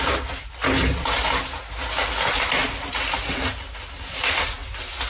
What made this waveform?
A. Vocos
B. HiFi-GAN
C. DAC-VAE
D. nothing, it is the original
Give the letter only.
D